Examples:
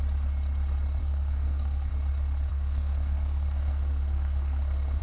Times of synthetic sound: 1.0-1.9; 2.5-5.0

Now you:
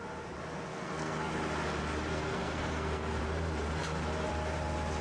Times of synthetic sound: 0.7-1.3; 2.1-3.2

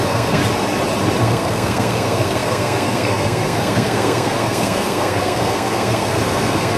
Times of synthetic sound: 0.0-0.4; 1.2-6.8

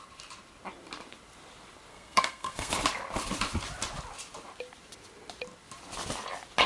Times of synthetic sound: 1.9-2.7

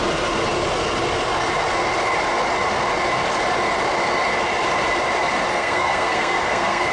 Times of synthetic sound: 5.5-6.9

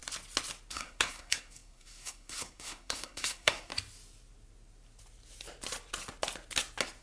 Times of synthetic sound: 0.7-3.7

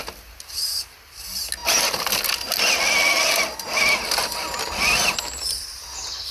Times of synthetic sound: none

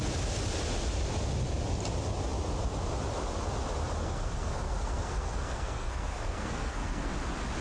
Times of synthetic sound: 4.0-7.1